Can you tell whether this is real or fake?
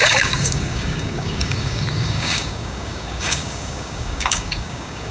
fake